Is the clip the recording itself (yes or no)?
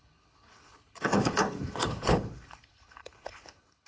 no